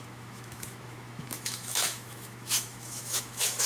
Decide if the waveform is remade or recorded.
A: remade